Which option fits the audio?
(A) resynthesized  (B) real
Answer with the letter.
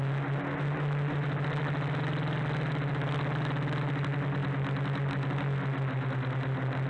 B